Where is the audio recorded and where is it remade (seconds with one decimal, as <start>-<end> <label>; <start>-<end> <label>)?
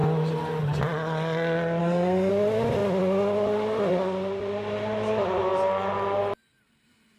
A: 0.0-1.8 recorded; 1.8-2.3 remade; 2.3-7.2 recorded